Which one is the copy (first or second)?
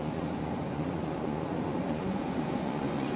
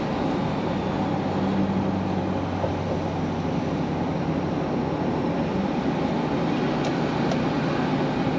first